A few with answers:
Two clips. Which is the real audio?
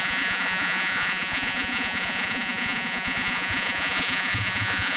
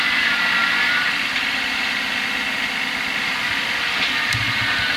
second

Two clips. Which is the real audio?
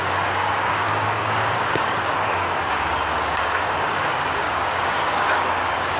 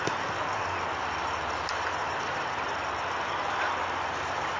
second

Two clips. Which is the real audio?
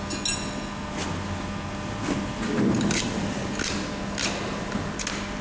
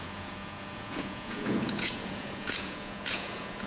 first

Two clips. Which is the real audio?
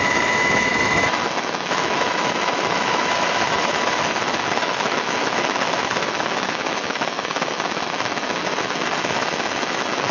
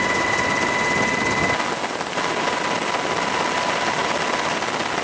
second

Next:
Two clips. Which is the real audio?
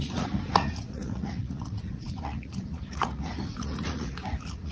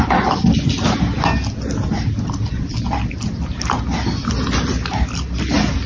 second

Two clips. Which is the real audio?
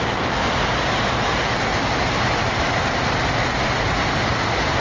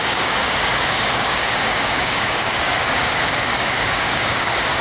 first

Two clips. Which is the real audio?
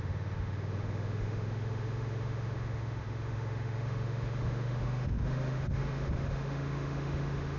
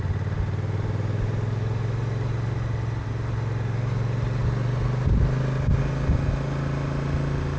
second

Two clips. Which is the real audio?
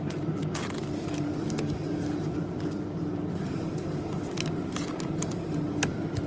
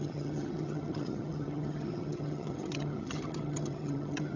first